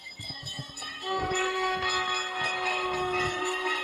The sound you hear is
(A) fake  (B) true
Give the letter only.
A